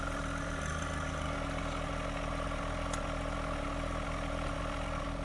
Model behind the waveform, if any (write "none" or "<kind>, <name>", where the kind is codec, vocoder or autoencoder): none